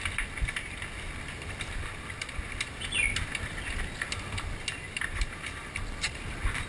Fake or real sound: real